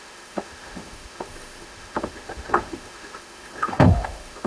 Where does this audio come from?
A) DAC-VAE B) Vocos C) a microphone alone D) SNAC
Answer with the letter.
A